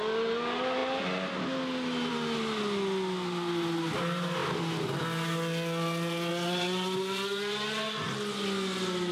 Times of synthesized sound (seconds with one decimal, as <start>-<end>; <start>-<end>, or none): none